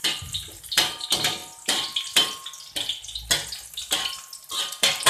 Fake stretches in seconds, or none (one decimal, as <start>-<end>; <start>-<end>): 0.0-1.4; 4.5-5.1